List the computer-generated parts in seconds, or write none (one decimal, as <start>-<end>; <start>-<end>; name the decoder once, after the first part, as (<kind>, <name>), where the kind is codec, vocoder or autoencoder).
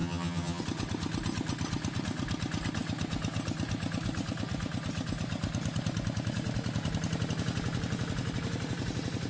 0.0-0.6 (vocoder, HiFi-GAN)